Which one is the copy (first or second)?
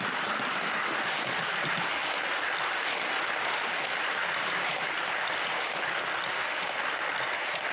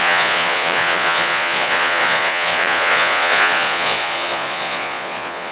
second